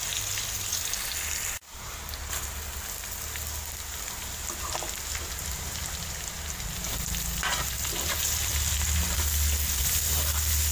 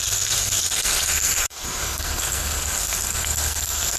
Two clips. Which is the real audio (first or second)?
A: first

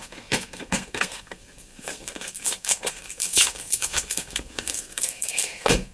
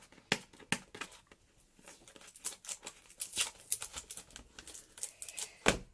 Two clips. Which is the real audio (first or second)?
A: second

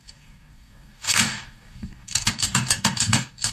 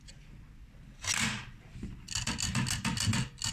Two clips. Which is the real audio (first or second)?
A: second